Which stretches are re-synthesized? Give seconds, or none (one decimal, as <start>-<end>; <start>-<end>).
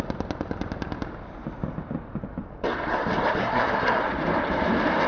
3.4-4.0